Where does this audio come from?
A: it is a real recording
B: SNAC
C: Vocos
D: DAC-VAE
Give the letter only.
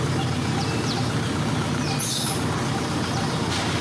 A